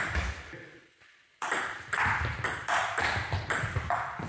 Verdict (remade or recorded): recorded